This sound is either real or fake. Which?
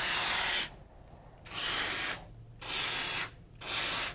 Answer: real